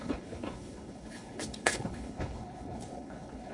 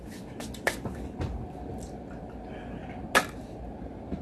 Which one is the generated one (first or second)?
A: first